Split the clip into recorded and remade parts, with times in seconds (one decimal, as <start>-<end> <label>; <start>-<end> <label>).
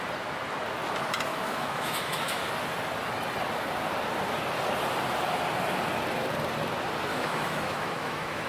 0.0-1.3 recorded; 1.3-2.5 remade; 2.5-7.1 recorded; 7.1-8.5 remade